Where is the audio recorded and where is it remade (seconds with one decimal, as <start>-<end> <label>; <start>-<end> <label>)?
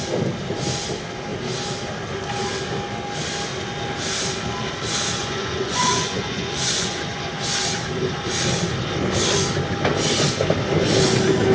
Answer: 0.0-5.2 recorded; 5.2-7.3 remade; 7.3-11.5 recorded